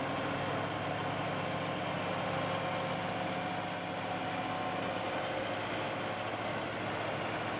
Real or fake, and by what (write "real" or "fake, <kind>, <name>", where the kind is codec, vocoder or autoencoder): real